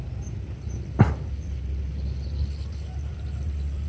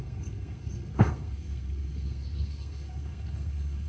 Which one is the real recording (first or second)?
first